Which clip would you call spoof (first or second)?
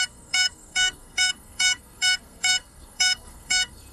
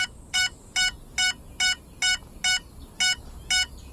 first